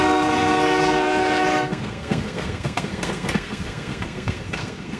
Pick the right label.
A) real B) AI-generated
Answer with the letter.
B